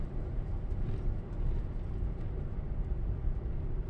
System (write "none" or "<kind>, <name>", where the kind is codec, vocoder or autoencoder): vocoder, BigVGAN v2